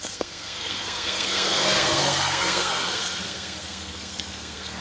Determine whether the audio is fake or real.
fake